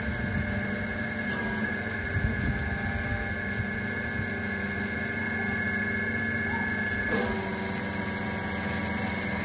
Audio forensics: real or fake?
real